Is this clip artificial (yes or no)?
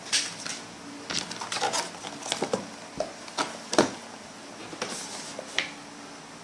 no